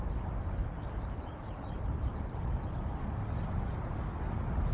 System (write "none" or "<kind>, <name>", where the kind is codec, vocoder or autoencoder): none